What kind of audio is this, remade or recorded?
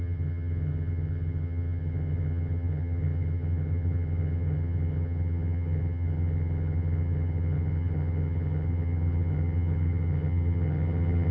remade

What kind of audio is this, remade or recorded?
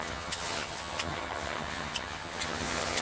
remade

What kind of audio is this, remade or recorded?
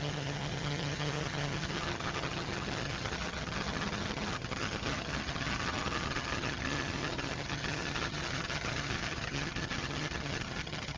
remade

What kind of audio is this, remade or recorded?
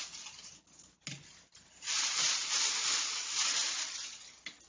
recorded